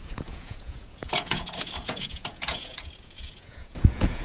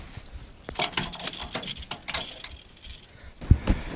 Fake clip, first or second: first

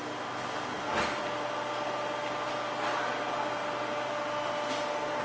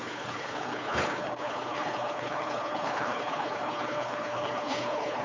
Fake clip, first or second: second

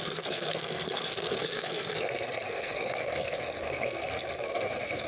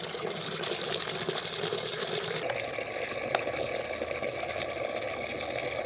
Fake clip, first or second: first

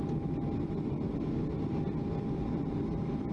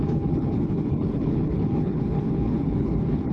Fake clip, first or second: second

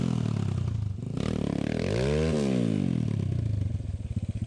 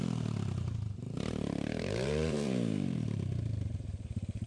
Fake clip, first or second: second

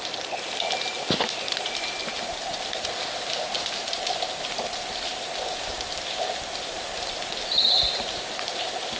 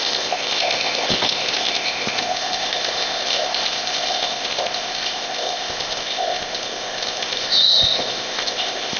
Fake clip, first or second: second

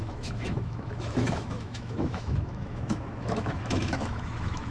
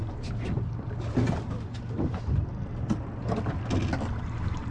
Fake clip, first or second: first